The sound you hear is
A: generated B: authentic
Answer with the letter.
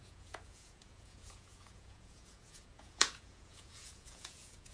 A